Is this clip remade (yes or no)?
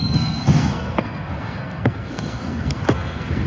yes